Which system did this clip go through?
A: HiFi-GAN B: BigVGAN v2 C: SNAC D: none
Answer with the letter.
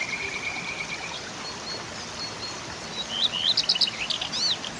D